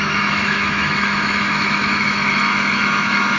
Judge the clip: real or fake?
fake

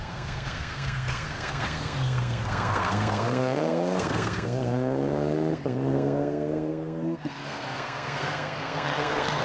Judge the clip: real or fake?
fake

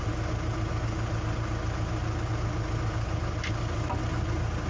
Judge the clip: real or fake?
real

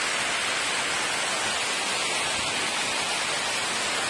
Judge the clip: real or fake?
real